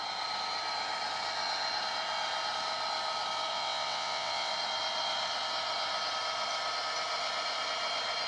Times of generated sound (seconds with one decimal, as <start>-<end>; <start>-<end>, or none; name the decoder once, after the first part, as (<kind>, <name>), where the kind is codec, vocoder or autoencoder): 3.5-4.5 (vocoder, WaveNeXt)